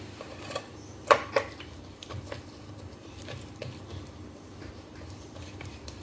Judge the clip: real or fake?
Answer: fake